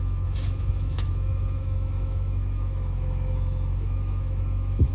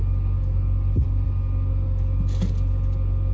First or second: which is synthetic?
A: first